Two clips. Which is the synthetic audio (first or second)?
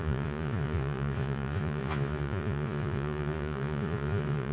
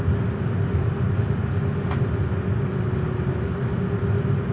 first